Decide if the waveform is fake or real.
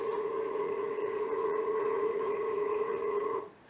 fake